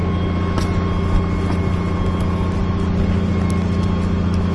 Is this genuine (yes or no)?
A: yes